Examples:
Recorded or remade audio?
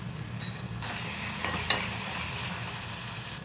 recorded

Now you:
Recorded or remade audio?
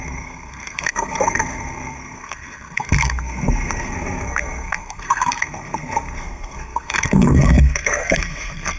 remade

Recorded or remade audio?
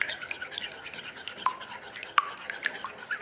recorded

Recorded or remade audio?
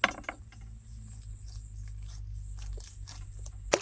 recorded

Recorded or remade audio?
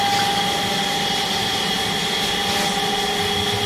recorded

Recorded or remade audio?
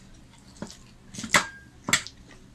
recorded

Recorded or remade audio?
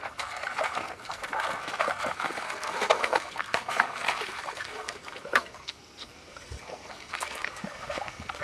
remade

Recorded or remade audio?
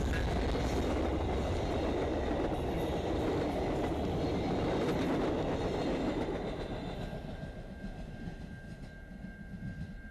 recorded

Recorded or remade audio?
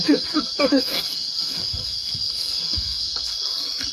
remade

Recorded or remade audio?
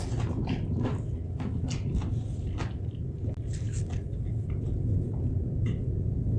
recorded